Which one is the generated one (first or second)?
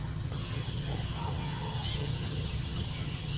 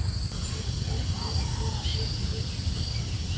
first